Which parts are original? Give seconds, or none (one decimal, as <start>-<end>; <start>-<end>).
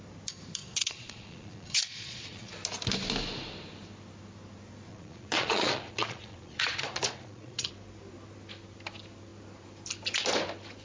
0.0-0.6; 2.5-4.9; 7.7-10.8